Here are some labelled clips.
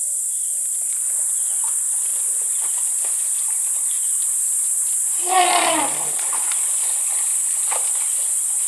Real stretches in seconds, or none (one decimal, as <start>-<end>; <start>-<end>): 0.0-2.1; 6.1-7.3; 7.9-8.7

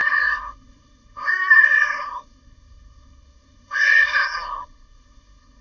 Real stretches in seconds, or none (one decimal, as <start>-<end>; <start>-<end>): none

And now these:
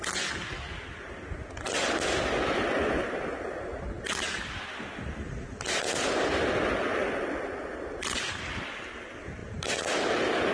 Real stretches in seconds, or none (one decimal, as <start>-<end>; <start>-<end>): 0.0-10.5